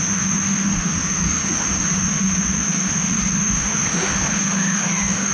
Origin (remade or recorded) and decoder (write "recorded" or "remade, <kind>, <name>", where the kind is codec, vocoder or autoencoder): remade, autoencoder, DAC-VAE